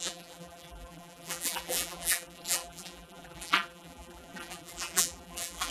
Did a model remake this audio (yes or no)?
yes